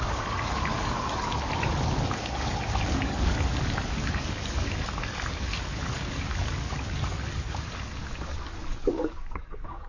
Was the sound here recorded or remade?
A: remade